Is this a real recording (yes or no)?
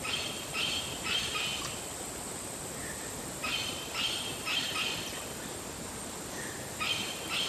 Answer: yes